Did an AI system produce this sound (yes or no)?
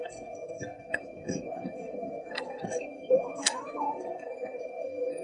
yes